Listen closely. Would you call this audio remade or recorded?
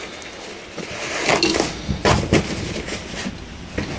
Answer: recorded